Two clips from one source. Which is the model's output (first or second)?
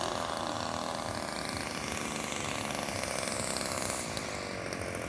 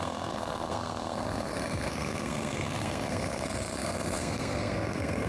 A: second